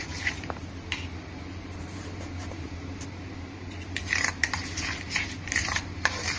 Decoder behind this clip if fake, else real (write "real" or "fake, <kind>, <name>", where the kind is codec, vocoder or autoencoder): fake, vocoder, BigVGAN v2